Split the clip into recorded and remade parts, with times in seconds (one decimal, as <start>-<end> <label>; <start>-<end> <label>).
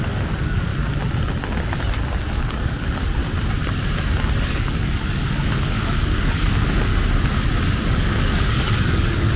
0.0-0.7 remade; 0.7-2.3 recorded; 2.3-3.2 remade; 3.2-4.5 recorded; 4.5-6.9 remade; 6.9-7.9 recorded; 7.9-9.4 remade